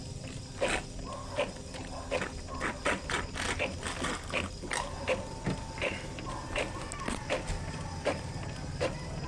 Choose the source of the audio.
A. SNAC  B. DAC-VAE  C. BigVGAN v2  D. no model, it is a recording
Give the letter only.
D